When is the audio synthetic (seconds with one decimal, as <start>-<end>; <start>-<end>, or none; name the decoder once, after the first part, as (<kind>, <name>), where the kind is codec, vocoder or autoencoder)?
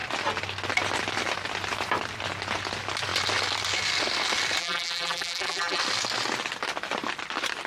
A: 4.6-5.8 (vocoder, BigVGAN v2)